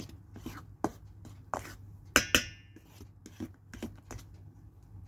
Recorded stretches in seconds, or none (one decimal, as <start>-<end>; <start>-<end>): 0.0-5.1